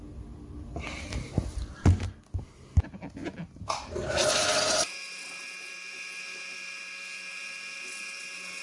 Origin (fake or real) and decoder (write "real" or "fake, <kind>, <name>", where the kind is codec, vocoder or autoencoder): real